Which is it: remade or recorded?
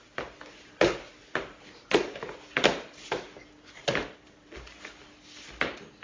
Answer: recorded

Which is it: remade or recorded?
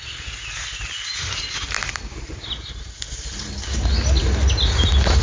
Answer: recorded